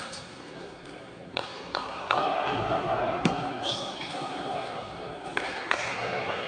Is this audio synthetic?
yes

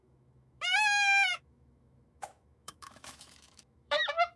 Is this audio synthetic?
yes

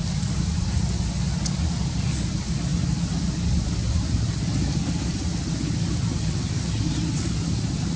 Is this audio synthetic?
no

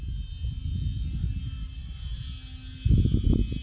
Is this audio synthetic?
no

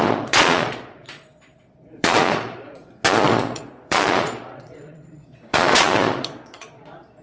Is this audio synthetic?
yes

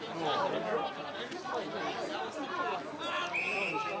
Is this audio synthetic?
no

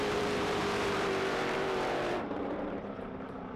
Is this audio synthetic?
yes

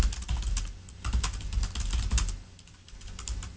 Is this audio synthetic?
no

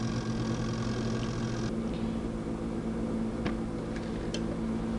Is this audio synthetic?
no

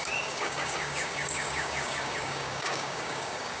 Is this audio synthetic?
yes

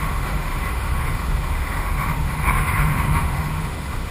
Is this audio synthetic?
yes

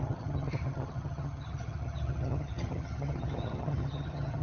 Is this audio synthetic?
yes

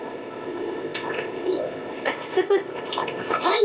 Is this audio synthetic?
yes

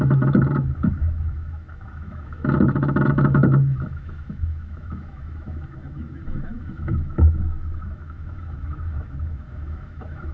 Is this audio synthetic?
yes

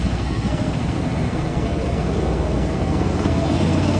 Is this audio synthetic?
yes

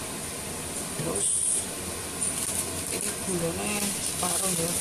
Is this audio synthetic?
no